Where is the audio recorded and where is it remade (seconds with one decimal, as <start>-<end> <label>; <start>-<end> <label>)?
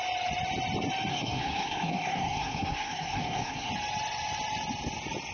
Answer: 0.0-1.1 recorded; 1.1-3.7 remade; 3.7-5.3 recorded